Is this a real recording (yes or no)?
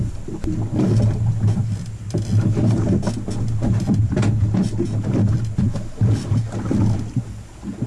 yes